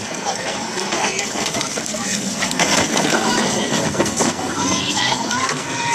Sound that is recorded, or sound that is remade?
remade